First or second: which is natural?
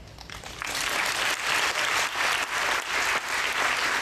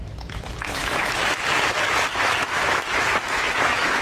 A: first